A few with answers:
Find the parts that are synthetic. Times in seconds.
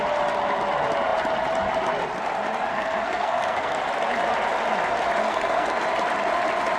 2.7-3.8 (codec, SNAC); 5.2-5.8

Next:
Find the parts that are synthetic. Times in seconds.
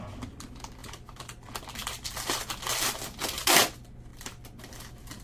0.8-2.5 (vocoder, BigVGAN v2); 4.1-4.7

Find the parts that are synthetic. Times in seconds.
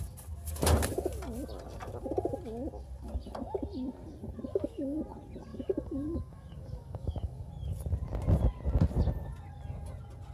4.5-5.0 (codec, DAC); 5.5-7.5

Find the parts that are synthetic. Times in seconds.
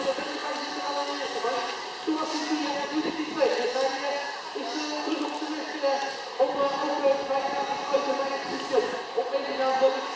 none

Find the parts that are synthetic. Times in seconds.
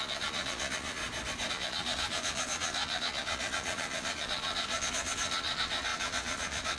0.0-1.0 (vocoder, Vocos); 1.5-6.8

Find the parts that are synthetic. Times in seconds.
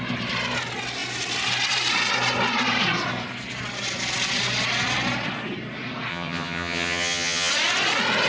6.1-7.5 (vocoder, HiFi-GAN)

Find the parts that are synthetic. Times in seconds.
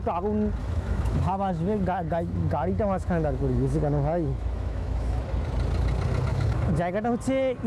0.6-5.2 (autoencoder, DAC-VAE); 6.3-7.1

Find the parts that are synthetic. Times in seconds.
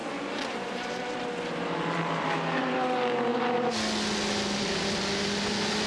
none